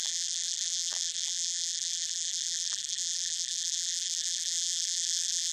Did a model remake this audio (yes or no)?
yes